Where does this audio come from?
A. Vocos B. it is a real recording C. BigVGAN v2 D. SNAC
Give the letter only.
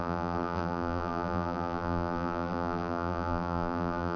C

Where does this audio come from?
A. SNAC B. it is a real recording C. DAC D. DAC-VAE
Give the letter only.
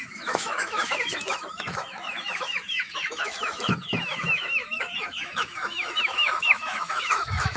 D